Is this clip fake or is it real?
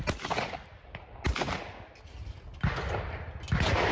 real